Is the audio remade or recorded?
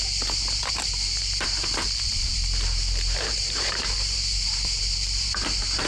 remade